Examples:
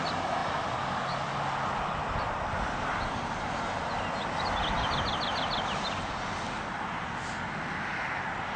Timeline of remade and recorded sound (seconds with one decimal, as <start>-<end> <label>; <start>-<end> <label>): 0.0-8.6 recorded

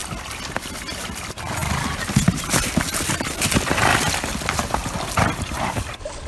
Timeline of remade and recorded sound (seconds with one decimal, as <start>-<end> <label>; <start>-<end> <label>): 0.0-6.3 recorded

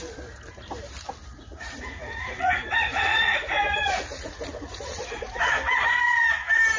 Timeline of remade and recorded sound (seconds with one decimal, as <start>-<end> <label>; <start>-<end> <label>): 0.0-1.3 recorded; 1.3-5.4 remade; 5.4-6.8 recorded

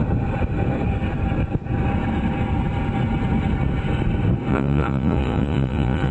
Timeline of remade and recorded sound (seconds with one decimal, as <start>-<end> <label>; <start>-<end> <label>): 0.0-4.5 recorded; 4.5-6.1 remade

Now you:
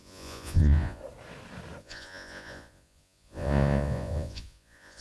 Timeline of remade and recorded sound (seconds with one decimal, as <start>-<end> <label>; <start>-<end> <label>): 0.0-1.0 remade; 1.0-1.8 recorded; 1.8-5.0 remade